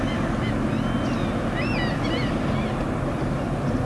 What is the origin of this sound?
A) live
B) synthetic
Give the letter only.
A